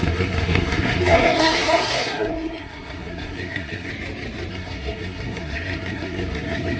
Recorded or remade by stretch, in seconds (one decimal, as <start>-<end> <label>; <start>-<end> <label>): 0.0-3.9 remade; 3.9-4.5 recorded; 4.5-6.8 remade